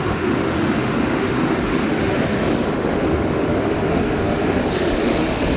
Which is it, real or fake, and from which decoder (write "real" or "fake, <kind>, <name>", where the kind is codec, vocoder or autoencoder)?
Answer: fake, autoencoder, DAC-VAE